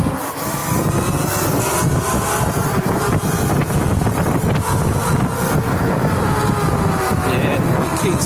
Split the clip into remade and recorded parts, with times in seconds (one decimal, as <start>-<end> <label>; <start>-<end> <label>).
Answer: 0.0-8.3 recorded